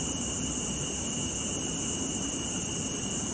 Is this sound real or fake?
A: real